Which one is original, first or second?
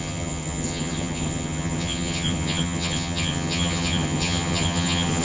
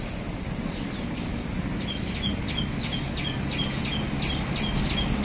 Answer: second